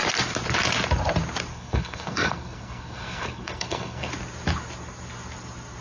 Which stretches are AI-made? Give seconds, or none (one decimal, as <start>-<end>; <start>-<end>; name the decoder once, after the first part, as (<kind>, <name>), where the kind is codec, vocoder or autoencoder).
1.5-4.1 (codec, SNAC)